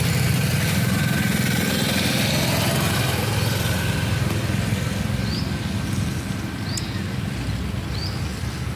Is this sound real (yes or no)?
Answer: yes